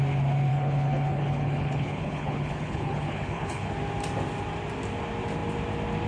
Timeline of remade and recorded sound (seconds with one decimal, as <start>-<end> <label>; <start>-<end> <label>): 0.0-0.5 recorded; 0.5-3.7 remade; 3.7-6.1 recorded